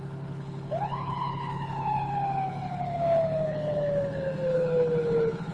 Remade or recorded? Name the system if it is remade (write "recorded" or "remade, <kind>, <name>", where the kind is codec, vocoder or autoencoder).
remade, codec, HILCodec